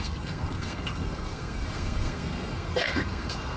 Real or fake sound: fake